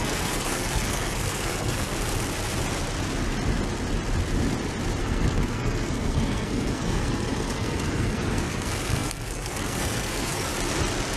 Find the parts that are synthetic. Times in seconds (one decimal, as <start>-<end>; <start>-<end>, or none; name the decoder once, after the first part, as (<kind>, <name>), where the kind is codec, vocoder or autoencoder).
0.0-1.9 (codec, SNAC); 5.0-10.5